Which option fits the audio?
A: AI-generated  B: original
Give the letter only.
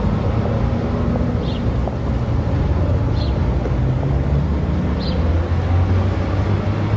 B